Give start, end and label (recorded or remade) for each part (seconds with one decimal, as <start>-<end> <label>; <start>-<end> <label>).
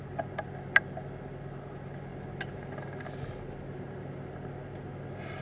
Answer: 0.0-5.4 recorded